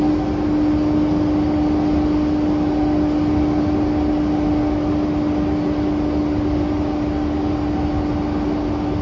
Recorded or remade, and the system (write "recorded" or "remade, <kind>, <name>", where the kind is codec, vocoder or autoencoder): recorded